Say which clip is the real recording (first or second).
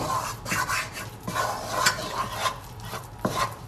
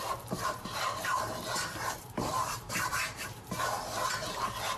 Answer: first